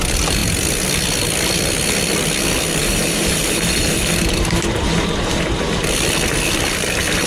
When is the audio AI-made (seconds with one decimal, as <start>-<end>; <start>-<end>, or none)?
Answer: 2.8-5.6